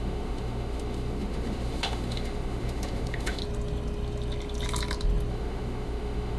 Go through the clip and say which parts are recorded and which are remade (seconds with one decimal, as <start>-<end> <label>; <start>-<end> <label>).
0.0-3.4 remade; 3.4-5.3 recorded; 5.3-6.4 remade